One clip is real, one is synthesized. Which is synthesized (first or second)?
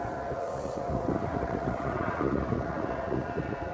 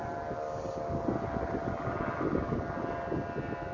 first